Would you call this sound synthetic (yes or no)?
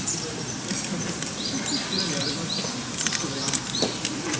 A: no